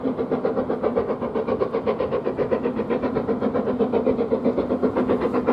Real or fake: real